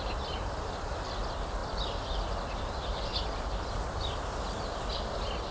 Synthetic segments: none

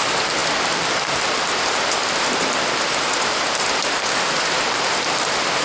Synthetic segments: none

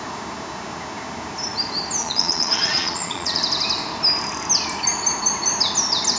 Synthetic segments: 2.0-3.4

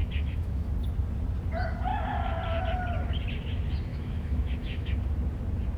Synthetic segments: 0.0-0.7; 3.9-4.9

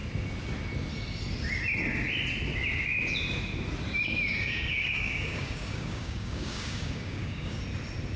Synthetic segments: 4.3-7.6

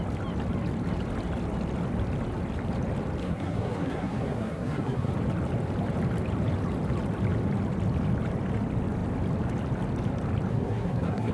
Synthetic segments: 3.2-5.1; 10.5-11.3

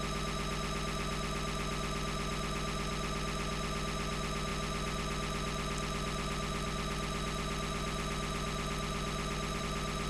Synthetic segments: none